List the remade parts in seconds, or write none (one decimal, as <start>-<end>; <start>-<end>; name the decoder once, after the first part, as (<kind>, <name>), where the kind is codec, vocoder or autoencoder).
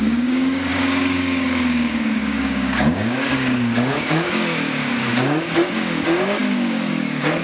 0.0-7.4 (codec, DAC)